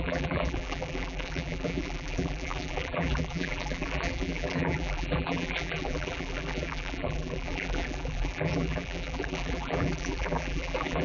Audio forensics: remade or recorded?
remade